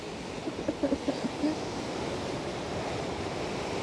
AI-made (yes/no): no